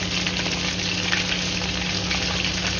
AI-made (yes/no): no